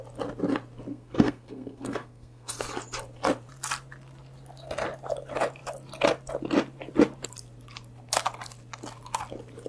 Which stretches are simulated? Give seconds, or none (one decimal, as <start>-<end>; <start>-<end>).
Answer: 0.9-2.5